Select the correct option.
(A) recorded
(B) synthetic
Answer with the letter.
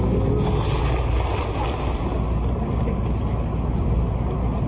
A